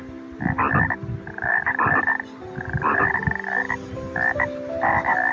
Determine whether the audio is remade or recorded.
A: recorded